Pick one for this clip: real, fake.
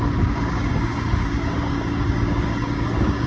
fake